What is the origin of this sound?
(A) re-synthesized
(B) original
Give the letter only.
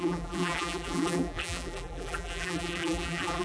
A